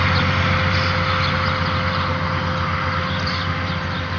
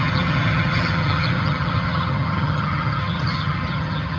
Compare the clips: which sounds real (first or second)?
first